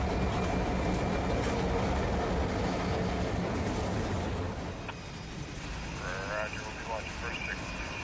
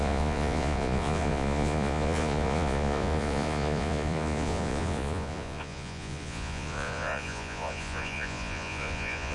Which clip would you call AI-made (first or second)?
second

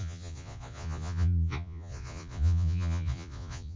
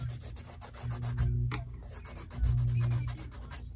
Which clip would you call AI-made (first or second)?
first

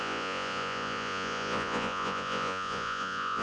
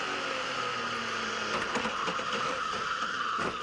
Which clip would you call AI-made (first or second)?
first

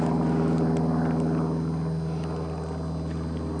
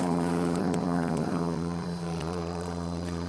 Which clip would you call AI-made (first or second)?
second